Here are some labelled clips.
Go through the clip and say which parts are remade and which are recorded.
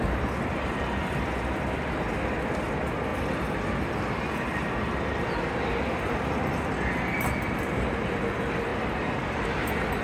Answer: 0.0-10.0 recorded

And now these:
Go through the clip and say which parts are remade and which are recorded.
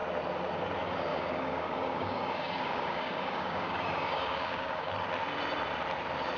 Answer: 0.0-1.1 recorded; 1.1-4.9 remade; 4.9-6.4 recorded